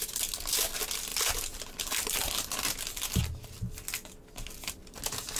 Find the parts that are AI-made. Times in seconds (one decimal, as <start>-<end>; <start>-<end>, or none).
1.1-4.3